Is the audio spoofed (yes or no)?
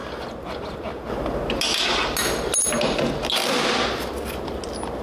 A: no